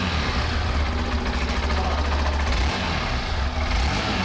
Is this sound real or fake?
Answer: real